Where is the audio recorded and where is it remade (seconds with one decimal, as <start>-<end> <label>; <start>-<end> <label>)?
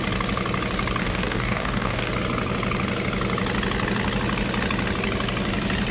0.0-1.0 recorded; 1.0-2.1 remade; 2.1-5.9 recorded